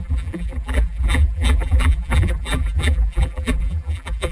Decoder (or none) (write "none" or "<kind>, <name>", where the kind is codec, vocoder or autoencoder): vocoder, BigVGAN v2